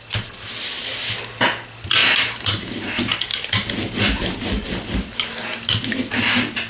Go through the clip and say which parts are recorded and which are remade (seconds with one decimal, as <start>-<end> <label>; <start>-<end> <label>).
0.0-2.0 recorded; 2.0-2.8 remade; 2.8-6.7 recorded